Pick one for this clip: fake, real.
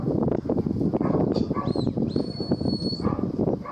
real